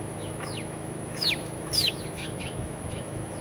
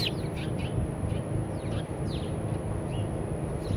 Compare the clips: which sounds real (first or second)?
second